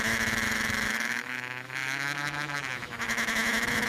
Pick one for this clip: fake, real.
fake